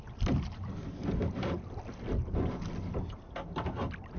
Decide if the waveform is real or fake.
real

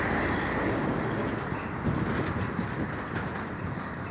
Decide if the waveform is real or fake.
real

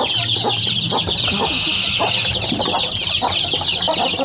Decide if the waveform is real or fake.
real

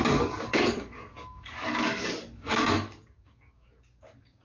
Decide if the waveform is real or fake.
fake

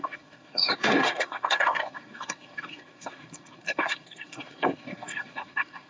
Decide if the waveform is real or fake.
fake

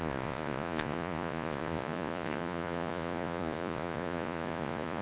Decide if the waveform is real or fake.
fake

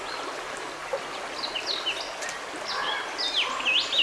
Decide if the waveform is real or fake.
real